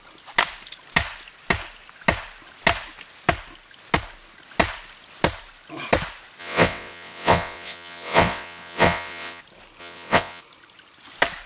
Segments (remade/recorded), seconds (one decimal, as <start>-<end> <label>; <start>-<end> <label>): 0.0-6.4 recorded; 6.4-9.4 remade; 9.4-9.8 recorded; 9.8-10.4 remade; 10.4-11.5 recorded